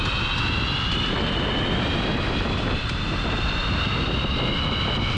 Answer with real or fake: real